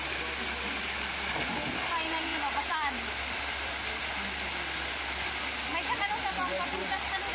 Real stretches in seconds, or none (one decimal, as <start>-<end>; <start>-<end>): 0.0-2.3; 4.0-7.3

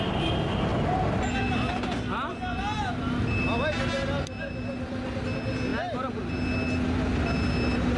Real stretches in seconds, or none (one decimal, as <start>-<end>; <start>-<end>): 0.0-8.0

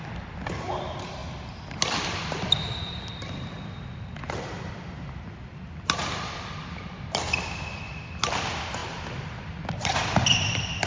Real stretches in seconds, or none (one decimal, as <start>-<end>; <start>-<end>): 0.0-10.9

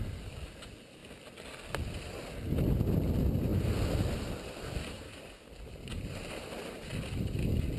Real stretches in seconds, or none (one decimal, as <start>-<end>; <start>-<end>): 0.0-3.5; 6.2-7.8

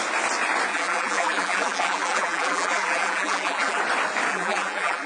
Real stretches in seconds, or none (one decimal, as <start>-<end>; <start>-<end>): 0.0-0.7; 3.8-4.3

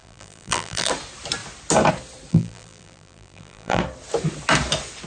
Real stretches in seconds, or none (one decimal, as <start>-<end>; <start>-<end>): 0.9-2.3; 3.8-5.1

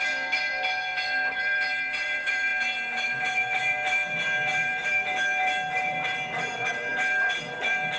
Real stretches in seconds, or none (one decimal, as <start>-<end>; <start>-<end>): none